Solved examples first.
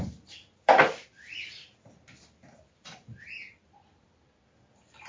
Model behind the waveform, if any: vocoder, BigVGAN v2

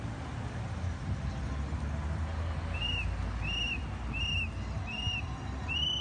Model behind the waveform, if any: none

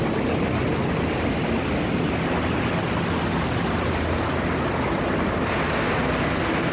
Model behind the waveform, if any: none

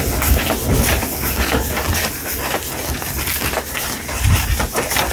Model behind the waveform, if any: none